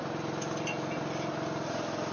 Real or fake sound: real